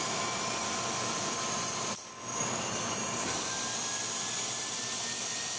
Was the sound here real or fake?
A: real